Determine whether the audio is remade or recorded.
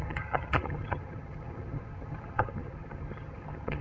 remade